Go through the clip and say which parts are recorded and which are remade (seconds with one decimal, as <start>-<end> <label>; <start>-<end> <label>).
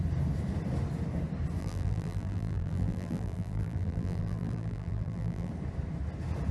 0.0-1.6 recorded; 1.6-5.5 remade; 5.5-6.5 recorded